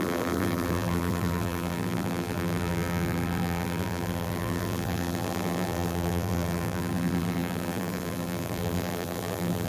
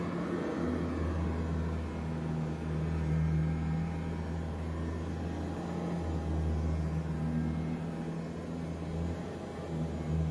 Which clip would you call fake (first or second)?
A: first